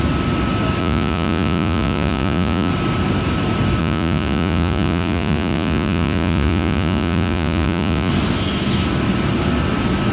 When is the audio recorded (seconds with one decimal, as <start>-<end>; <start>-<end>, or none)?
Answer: 0.0-0.8; 2.7-3.8; 8.1-10.1